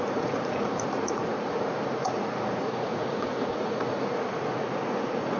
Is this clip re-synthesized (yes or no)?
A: yes